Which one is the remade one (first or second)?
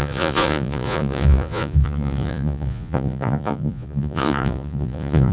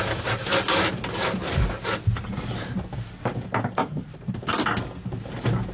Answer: first